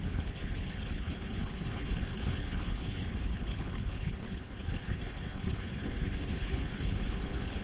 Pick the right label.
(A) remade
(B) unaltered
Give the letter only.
A